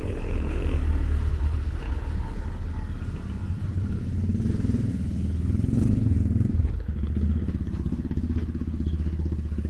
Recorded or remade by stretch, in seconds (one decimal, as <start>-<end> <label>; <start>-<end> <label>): 0.0-0.6 remade; 0.6-1.3 recorded; 1.3-2.7 remade; 2.7-4.9 recorded; 4.9-6.2 remade; 6.2-6.7 recorded; 6.7-9.7 remade